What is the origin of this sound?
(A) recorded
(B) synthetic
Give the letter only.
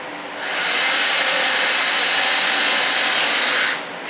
A